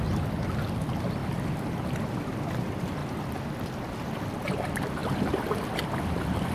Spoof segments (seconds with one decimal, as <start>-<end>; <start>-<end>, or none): none